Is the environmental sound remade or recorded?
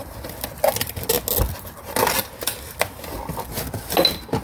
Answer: recorded